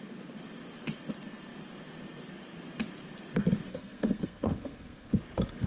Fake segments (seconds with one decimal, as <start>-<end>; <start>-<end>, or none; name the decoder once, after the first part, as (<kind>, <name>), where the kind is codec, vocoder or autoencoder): 3.7-5.1 (codec, SNAC)

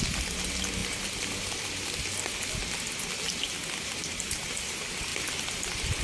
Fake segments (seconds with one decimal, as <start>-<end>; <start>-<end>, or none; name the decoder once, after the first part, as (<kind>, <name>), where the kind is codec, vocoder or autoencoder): none

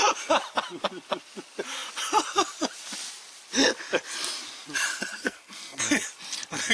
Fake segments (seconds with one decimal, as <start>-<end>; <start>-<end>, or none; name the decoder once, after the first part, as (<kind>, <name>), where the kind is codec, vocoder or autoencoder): 5.2-5.8 (codec, SNAC)

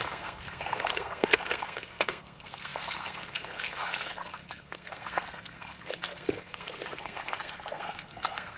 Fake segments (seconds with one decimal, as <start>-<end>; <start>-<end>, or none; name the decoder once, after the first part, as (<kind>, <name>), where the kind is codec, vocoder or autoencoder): 0.0-8.6 (codec, SNAC)